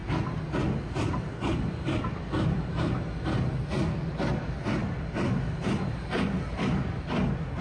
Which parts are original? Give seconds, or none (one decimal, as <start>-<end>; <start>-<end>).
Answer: 0.0-7.6